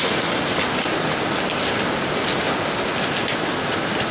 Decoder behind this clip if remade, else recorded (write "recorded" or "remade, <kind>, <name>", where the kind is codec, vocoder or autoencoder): recorded